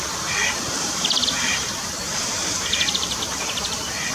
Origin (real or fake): fake